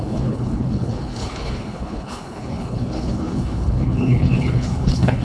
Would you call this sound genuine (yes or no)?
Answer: no